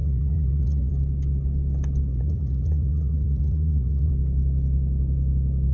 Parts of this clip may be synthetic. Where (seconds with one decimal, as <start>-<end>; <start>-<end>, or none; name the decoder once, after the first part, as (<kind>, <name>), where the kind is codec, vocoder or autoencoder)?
0.0-0.9 (vocoder, Vocos); 2.1-4.1